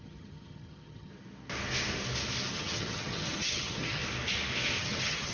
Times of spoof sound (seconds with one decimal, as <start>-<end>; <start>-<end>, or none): 0.0-1.1; 2.5-4.0; 4.8-5.3